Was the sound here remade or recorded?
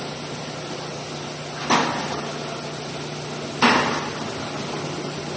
recorded